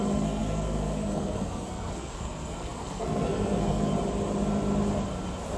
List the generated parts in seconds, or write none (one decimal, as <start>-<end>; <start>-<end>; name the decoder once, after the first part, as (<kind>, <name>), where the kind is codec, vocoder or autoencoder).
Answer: 0.0-3.9 (codec, SNAC)